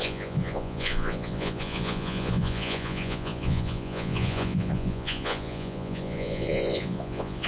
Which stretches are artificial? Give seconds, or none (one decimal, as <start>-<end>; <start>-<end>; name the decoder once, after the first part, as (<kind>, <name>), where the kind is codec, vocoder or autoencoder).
0.0-7.5 (vocoder, Vocos)